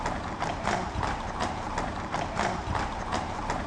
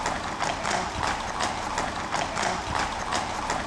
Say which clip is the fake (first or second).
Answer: first